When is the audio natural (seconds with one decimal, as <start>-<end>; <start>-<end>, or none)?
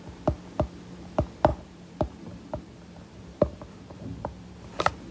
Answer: 0.0-1.5; 4.6-5.1